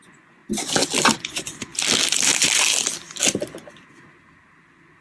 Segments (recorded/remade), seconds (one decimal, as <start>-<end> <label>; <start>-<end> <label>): 0.0-0.4 remade; 0.4-1.2 recorded; 1.2-1.7 remade; 1.7-5.0 recorded